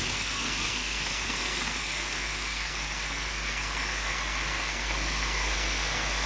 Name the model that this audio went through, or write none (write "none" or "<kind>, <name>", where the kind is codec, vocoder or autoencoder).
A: codec, SNAC